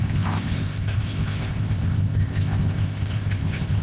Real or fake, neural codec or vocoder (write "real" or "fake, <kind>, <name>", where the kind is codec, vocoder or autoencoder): fake, codec, ZipCodec